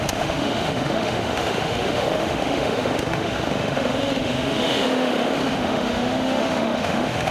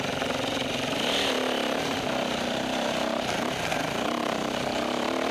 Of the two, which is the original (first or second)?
second